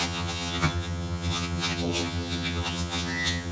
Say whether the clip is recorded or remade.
remade